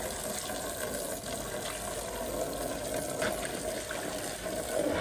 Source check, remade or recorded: recorded